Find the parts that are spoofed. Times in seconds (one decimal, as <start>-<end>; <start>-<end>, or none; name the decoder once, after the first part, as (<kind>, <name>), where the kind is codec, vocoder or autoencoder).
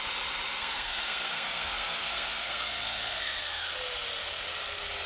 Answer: 0.6-3.7 (codec, SNAC)